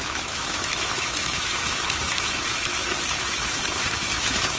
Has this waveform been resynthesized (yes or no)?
yes